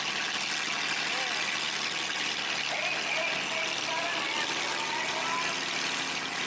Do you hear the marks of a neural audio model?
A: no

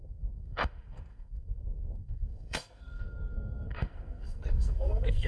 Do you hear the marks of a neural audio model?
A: yes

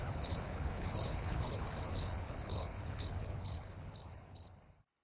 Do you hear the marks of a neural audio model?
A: yes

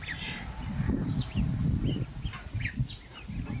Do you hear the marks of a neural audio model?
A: no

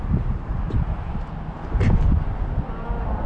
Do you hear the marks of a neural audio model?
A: no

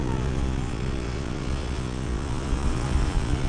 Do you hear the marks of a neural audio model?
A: yes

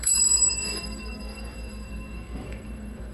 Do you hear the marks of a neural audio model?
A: yes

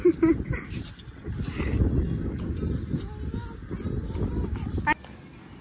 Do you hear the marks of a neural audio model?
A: no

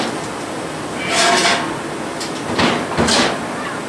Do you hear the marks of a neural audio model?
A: no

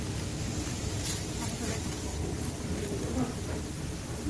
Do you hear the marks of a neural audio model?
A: no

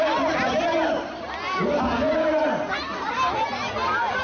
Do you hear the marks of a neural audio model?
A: no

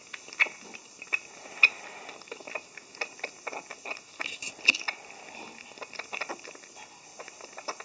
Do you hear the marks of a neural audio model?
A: no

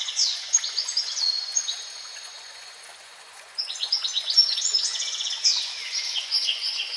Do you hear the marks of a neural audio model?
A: yes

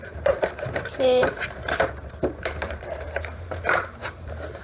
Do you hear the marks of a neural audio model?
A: yes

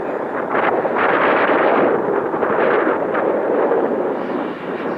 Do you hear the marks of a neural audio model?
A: no